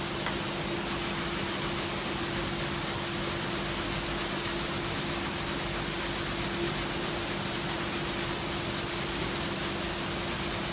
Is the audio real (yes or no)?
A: yes